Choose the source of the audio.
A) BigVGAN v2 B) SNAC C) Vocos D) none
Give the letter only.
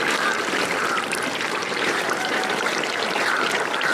A